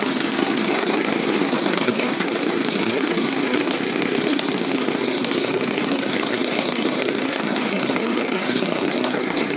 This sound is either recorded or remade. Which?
remade